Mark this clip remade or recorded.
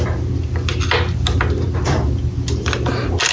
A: recorded